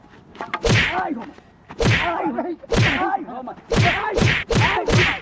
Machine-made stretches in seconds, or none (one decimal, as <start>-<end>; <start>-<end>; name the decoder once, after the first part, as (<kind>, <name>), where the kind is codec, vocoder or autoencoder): 3.8-4.5 (vocoder, Vocos)